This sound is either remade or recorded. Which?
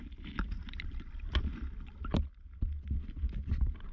recorded